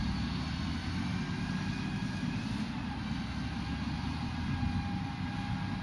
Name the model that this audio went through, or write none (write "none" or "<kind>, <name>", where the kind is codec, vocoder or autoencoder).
none